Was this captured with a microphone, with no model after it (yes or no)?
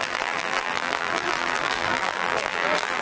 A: no